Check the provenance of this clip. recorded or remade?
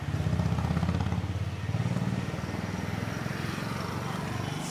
recorded